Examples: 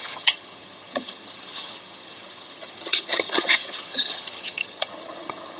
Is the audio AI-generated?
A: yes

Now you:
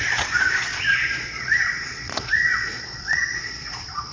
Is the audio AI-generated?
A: yes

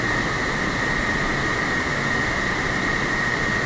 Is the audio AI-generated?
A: no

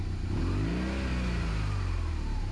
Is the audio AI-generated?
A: no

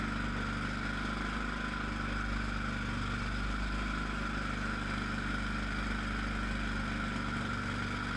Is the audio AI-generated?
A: no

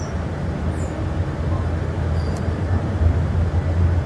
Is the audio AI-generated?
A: no